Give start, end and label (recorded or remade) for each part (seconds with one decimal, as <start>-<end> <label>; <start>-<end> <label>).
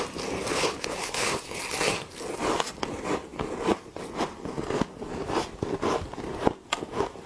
0.0-0.5 recorded; 0.5-1.6 remade; 1.6-7.3 recorded